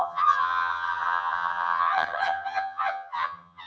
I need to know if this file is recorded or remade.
remade